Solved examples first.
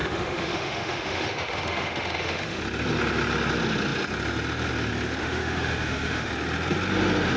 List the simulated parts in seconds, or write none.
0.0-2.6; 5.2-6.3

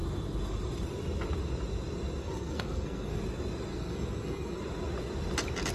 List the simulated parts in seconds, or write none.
2.2-3.2; 3.7-4.6